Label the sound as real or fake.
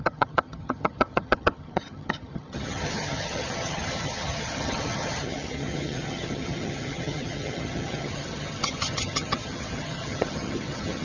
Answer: fake